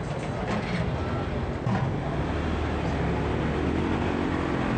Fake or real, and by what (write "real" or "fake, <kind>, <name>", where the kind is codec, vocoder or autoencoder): real